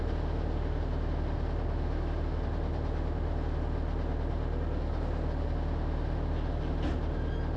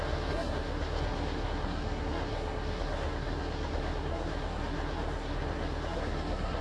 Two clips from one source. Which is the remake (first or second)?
second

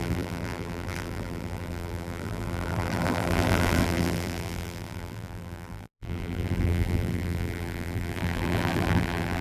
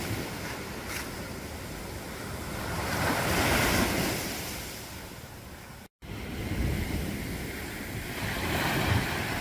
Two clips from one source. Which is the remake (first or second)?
first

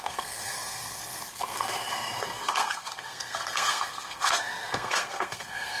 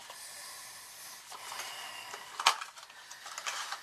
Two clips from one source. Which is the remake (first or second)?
first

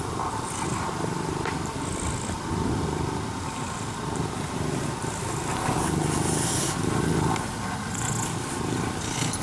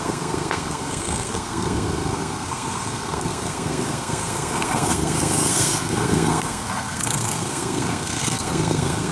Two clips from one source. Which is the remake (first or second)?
second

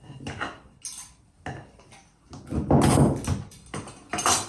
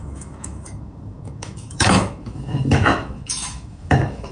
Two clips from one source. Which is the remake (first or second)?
second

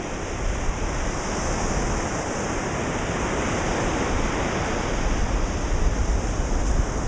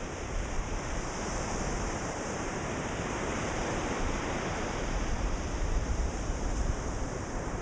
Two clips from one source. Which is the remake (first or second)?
second